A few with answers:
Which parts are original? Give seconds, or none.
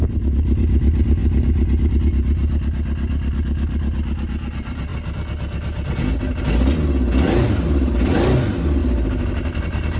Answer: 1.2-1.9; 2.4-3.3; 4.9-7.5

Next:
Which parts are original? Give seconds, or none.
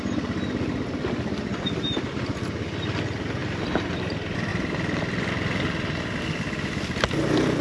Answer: 0.0-4.5; 6.2-7.6